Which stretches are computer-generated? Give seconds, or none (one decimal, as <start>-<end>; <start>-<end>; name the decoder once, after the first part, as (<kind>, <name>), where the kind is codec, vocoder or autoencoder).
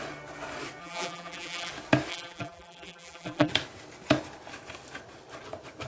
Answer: 0.8-1.7 (vocoder, BigVGAN v2); 2.1-3.5